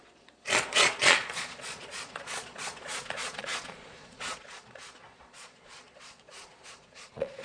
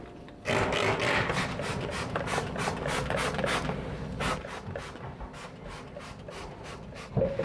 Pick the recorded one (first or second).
second